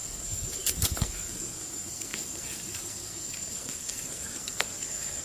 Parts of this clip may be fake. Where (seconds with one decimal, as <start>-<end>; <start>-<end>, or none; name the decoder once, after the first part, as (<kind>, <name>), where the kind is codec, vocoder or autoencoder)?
0.0-5.2 (codec, SNAC)